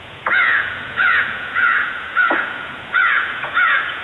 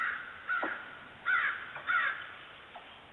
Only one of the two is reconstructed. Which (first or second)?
first